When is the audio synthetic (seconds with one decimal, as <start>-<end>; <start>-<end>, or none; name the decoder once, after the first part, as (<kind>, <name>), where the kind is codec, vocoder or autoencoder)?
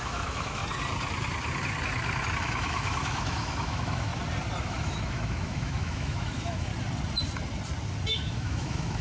0.0-0.6 (autoencoder, DAC-VAE); 2.4-4.1; 4.6-6.7; 8.1-9.0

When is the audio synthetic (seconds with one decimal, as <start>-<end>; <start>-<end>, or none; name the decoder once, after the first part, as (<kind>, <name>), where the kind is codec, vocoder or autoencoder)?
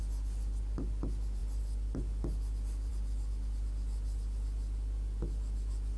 none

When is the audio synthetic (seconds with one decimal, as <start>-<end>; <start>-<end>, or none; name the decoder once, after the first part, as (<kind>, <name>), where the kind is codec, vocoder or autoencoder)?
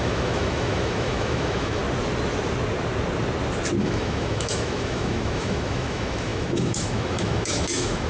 0.0-1.8 (autoencoder, DAC-VAE); 3.8-8.1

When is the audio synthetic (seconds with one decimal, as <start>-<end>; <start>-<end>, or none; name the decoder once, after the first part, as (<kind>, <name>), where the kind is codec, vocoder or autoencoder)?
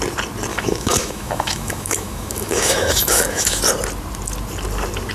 0.5-3.6 (autoencoder, DAC-VAE)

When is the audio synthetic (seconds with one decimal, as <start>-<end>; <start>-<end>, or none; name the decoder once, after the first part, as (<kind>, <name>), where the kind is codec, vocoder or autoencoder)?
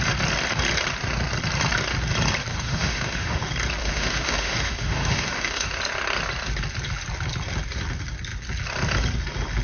2.5-3.4 (autoencoder, DAC-VAE); 3.8-5.7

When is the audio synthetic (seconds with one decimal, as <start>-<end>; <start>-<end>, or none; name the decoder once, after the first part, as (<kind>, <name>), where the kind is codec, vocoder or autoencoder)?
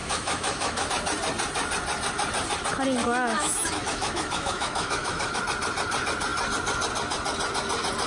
0.0-0.9 (autoencoder, DAC-VAE); 3.0-5.4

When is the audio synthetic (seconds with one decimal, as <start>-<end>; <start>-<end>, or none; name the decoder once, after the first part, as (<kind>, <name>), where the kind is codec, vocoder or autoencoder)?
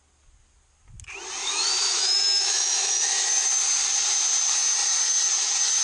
1.4-3.3 (autoencoder, DAC-VAE)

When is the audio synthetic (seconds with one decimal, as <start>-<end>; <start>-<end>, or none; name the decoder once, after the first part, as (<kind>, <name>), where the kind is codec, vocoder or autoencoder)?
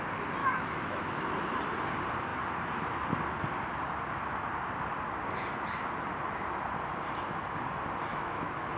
0.4-1.3 (autoencoder, DAC-VAE); 8.1-8.8